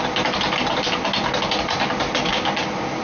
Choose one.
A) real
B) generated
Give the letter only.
A